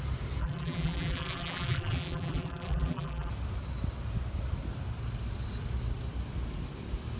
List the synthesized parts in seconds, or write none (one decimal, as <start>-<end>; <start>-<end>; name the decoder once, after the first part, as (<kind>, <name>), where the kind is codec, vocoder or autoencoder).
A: 0.4-3.3 (vocoder, BigVGAN v2)